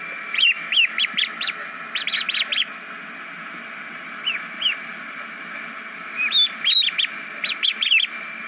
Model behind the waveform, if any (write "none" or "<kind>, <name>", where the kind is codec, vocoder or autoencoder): none